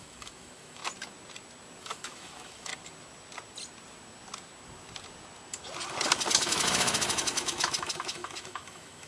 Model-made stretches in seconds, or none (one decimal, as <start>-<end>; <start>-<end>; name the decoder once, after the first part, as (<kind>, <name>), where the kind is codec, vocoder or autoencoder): 0.0-0.8 (autoencoder, DAC-VAE); 1.8-2.7; 6.3-9.1